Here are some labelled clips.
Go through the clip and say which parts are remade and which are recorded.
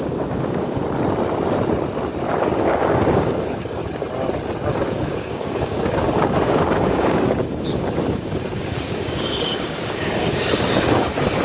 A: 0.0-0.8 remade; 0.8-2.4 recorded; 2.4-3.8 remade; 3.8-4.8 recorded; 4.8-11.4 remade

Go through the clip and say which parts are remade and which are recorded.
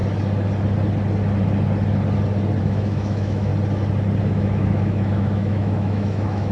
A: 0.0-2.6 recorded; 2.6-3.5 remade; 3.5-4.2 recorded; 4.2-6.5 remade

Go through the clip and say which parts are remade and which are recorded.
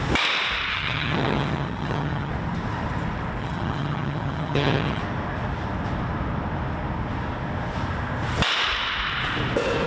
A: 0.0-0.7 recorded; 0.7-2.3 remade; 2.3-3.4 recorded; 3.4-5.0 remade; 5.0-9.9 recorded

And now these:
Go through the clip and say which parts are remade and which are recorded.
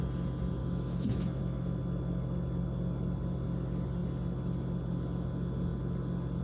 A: 0.0-0.6 recorded; 0.6-1.4 remade; 1.4-6.4 recorded